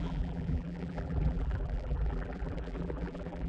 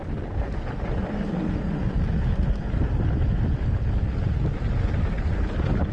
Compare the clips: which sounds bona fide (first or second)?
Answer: second